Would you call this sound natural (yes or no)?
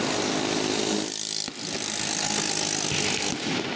yes